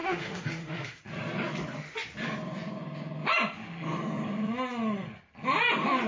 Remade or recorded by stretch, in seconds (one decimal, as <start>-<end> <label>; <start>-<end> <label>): 0.0-1.0 remade; 1.0-6.1 recorded